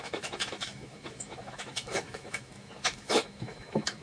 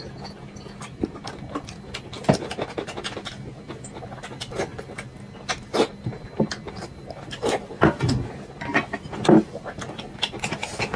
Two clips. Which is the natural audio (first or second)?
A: second